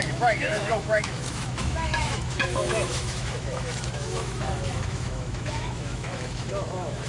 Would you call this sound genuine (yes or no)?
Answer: no